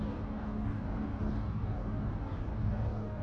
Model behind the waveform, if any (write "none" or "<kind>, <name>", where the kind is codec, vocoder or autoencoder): codec, DAC